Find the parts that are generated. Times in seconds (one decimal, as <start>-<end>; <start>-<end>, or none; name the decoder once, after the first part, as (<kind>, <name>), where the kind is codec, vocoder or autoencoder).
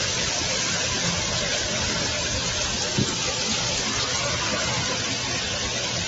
none